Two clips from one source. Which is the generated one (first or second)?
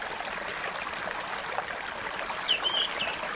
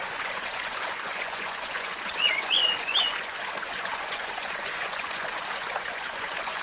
second